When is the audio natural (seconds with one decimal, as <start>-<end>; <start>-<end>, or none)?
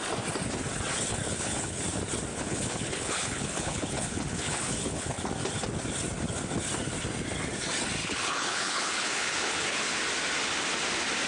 0.0-1.1; 1.8-2.3; 5.3-8.0; 10.0-11.3